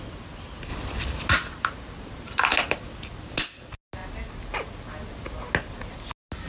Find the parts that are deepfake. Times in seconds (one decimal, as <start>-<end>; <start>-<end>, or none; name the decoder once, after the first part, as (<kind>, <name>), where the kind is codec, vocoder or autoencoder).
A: none